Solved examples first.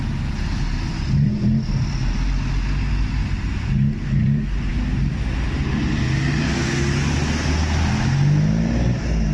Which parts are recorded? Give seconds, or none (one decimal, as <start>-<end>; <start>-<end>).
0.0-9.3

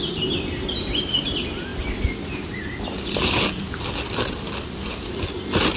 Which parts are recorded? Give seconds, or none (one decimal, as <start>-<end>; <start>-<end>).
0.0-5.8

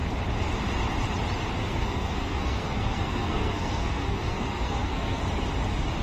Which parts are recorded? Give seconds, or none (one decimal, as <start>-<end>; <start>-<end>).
0.0-1.6; 5.2-6.0